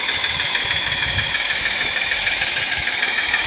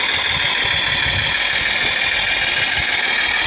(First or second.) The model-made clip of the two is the first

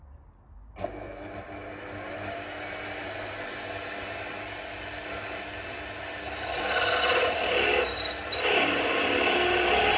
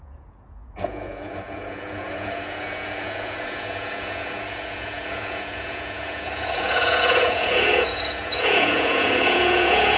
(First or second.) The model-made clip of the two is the second